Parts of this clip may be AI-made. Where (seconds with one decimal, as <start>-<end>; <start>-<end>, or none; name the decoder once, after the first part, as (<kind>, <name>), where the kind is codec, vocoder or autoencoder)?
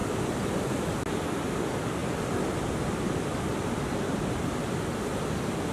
none